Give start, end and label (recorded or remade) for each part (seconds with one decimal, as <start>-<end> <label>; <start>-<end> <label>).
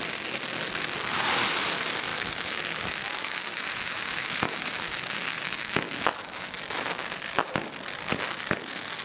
0.0-2.1 recorded; 2.1-6.6 remade; 6.6-9.0 recorded